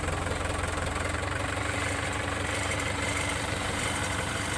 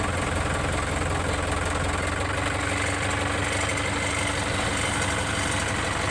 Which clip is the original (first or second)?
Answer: second